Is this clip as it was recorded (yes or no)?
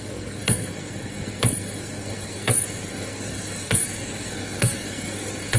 no